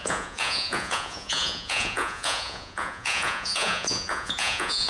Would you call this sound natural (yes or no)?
no